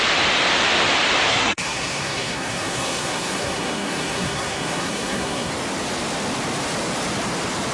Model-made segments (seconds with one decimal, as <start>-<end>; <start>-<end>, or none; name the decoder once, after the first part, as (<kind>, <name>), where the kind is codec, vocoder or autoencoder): 1.3-5.5 (codec, SNAC)